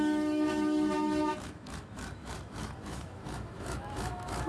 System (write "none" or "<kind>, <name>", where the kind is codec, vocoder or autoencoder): autoencoder, DAC-VAE